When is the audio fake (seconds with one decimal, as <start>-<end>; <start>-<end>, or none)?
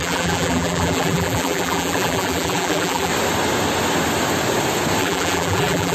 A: 0.0-3.1; 5.0-5.9